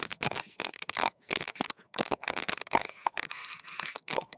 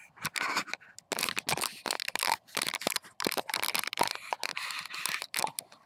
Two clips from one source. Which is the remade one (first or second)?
first